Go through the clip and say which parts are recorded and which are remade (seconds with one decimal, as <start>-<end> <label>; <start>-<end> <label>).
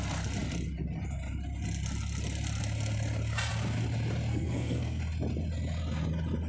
0.0-4.3 recorded; 4.3-5.0 remade; 5.0-6.5 recorded